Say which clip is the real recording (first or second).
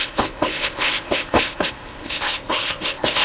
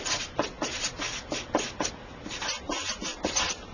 second